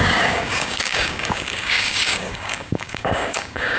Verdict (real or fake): fake